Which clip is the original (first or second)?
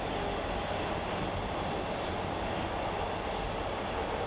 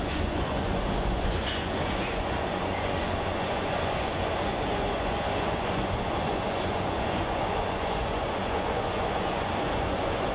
first